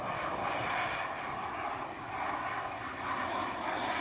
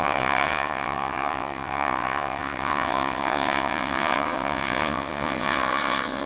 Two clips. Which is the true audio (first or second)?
first